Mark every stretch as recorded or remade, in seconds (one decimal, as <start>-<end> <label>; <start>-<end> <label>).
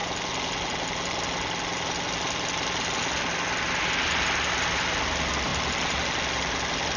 0.0-7.0 recorded